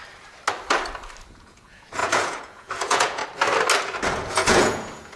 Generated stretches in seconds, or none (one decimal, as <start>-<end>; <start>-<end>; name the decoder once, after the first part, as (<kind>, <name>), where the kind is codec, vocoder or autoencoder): 1.3-3.2 (vocoder, Vocos); 4.1-5.2